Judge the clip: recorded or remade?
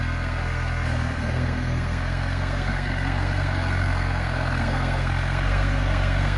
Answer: remade